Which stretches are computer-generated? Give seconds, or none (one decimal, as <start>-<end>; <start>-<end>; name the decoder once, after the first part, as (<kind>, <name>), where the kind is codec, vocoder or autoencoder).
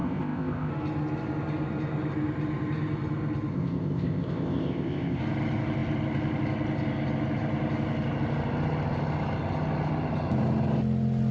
0.0-0.7 (codec, ZipCodec); 3.5-5.2